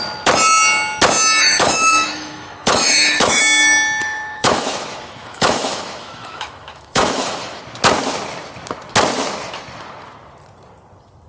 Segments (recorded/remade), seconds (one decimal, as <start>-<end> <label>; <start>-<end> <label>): 0.0-1.4 recorded; 1.4-3.4 remade; 3.4-4.0 recorded; 4.0-7.6 remade; 7.6-11.3 recorded